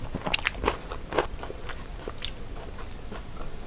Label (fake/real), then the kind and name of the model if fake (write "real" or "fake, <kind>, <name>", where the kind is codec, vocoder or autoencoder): real